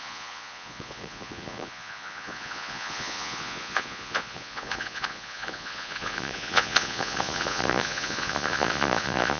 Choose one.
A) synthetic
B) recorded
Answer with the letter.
A